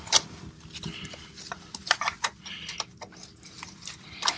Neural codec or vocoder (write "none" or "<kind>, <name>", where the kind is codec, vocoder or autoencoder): none